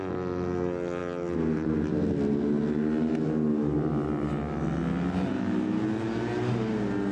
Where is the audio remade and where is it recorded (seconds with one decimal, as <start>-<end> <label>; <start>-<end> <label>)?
0.0-7.1 recorded

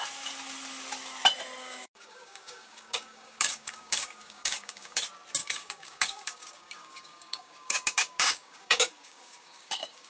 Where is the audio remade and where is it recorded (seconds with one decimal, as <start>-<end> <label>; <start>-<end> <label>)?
0.0-1.6 recorded; 1.6-5.0 remade; 5.0-5.4 recorded; 5.4-10.1 remade

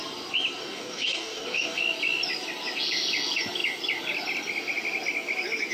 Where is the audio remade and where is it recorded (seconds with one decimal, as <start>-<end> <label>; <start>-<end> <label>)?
0.0-0.6 recorded; 0.6-1.8 remade; 1.8-5.7 recorded

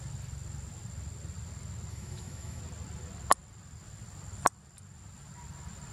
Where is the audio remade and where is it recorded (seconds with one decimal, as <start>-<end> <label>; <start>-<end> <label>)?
0.0-1.9 recorded; 1.9-2.6 remade; 2.6-5.9 recorded

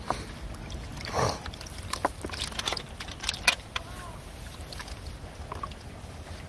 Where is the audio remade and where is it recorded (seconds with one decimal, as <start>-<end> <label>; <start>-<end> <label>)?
0.0-6.5 recorded

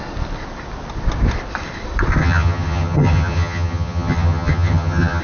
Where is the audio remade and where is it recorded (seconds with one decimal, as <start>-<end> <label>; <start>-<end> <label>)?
0.0-2.2 recorded; 2.2-5.2 remade

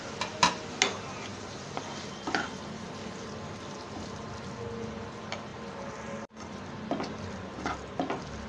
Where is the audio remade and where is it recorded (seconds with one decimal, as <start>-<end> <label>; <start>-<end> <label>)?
0.0-1.3 recorded; 1.3-4.6 remade; 4.6-8.5 recorded